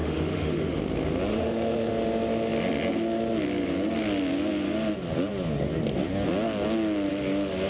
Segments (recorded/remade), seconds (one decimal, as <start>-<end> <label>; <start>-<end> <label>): 0.0-0.8 remade; 0.8-1.3 recorded; 1.3-1.9 remade; 1.9-7.7 recorded